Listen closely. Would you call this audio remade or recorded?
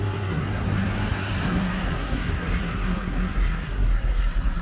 remade